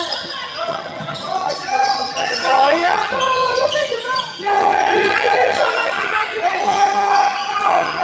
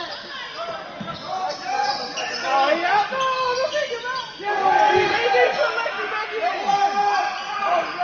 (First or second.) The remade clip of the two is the first